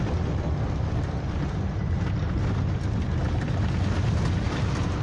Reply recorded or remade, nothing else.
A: recorded